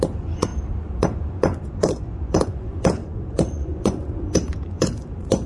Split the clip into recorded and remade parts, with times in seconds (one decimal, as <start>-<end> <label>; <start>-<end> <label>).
0.0-0.5 remade; 0.5-1.0 recorded; 1.0-5.5 remade